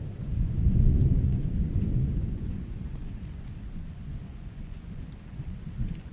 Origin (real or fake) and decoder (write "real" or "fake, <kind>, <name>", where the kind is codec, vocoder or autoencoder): fake, vocoder, Vocos